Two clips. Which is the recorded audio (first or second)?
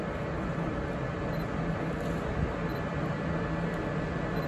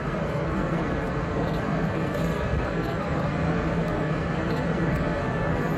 first